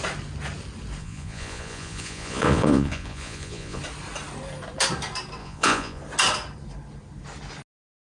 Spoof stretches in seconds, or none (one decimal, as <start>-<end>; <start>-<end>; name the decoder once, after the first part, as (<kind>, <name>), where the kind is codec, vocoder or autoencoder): 1.0-3.8 (vocoder, Vocos); 5.4-6.0